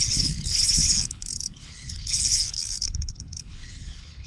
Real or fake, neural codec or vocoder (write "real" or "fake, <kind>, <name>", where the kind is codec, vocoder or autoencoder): fake, codec, HILCodec